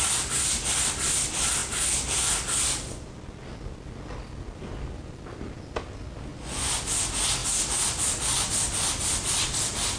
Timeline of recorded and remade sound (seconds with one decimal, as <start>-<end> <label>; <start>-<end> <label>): 0.0-6.3 recorded; 6.3-6.8 remade; 6.8-10.0 recorded